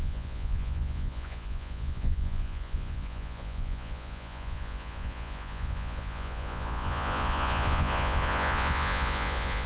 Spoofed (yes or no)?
yes